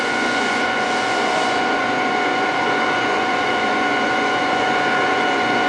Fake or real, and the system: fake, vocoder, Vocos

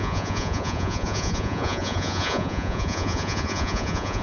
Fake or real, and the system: fake, vocoder, Vocos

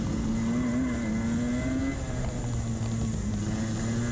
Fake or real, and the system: real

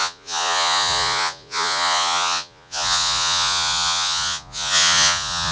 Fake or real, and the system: fake, vocoder, Vocos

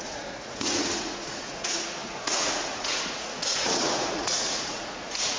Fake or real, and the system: fake, vocoder, Vocos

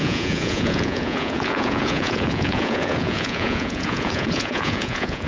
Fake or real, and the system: fake, vocoder, Vocos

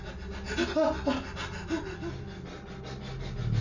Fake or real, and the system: real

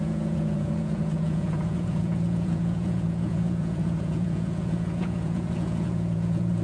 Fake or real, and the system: fake, vocoder, Vocos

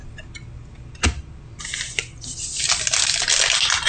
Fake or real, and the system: real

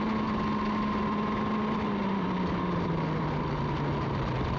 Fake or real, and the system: real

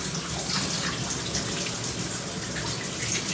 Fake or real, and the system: real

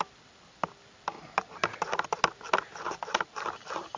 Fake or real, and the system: real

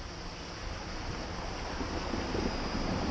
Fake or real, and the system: real